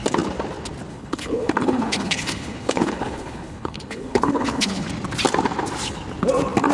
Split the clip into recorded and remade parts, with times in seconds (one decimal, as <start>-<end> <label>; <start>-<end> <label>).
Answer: 0.0-0.9 recorded; 0.9-4.9 remade; 4.9-6.7 recorded